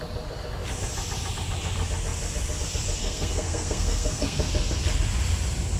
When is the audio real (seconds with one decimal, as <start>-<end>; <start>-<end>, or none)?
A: 0.0-3.0; 4.5-5.8